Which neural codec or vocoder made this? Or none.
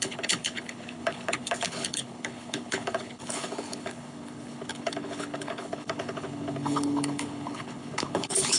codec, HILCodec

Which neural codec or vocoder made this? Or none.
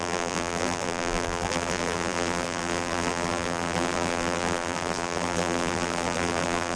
vocoder, BigVGAN v2